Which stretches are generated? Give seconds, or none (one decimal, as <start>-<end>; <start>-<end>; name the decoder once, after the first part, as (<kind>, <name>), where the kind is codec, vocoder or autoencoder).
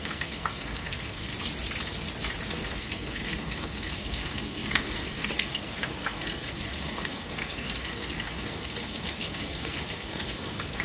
0.0-1.3 (codec, SNAC); 2.5-10.8